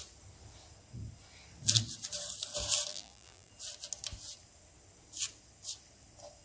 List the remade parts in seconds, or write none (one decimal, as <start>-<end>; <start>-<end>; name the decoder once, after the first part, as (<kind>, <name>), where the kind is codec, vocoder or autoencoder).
2.9-3.5 (vocoder, BigVGAN v2)